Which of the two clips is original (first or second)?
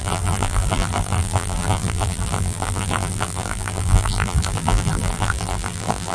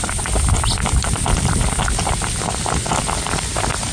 second